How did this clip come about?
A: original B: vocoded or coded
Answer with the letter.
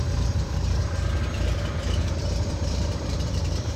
B